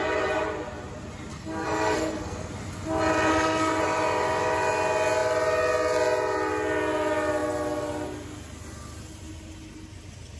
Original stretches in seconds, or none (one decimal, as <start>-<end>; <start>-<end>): 0.0-1.3; 2.5-3.3; 3.8-10.4